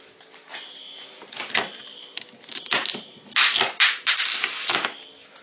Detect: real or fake real